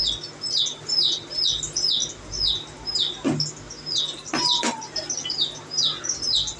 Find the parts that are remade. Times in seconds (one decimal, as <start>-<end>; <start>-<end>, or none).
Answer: 0.7-1.4